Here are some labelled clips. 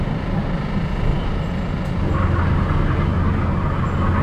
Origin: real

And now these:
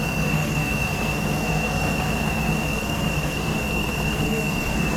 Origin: fake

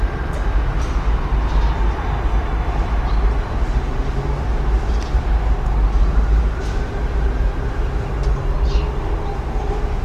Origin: real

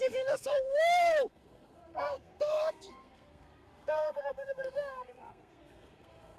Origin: fake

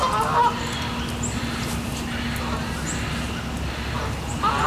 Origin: real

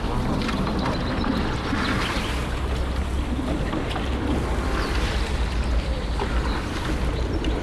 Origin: real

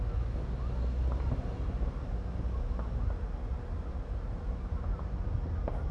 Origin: real